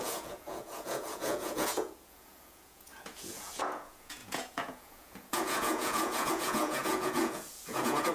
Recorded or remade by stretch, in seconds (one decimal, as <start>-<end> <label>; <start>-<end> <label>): 0.0-8.1 remade